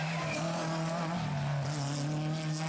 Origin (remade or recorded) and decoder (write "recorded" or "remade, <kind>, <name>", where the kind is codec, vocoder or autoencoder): recorded